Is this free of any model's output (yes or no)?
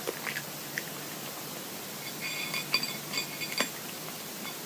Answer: yes